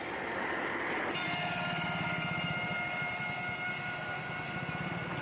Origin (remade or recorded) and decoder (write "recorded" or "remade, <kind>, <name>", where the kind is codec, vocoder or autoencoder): recorded